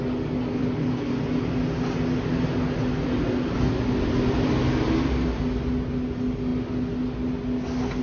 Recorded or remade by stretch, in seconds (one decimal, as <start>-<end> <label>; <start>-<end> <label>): 0.0-0.6 recorded; 0.6-1.1 remade; 1.1-8.0 recorded